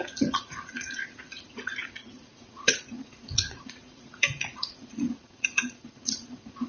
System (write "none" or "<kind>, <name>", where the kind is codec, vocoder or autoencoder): vocoder, Vocos